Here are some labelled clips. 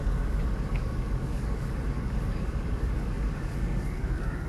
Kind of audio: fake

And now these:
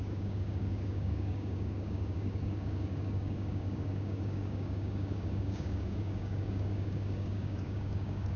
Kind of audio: fake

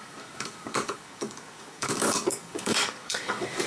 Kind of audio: fake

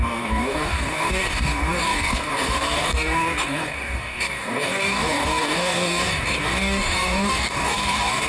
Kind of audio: fake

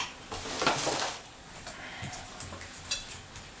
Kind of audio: real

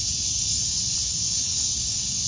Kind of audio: fake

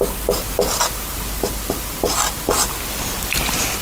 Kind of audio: real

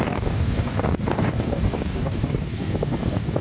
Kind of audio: fake